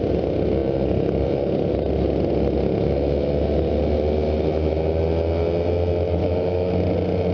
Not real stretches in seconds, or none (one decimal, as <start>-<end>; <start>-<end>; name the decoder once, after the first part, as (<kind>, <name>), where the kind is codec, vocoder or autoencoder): 6.2-6.7 (autoencoder, DAC-VAE)